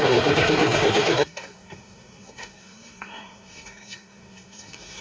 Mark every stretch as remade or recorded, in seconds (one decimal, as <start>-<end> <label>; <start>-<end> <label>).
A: 0.0-5.0 remade